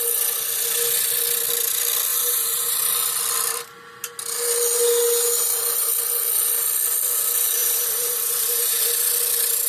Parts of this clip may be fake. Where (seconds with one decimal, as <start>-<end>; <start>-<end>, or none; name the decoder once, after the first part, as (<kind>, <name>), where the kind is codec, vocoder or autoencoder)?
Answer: 2.1-2.9 (vocoder, BigVGAN v2); 7.6-8.9